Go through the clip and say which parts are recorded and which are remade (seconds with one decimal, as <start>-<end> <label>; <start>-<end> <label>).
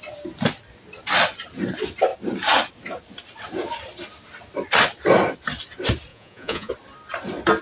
0.0-6.1 recorded; 6.1-6.7 remade; 6.7-7.6 recorded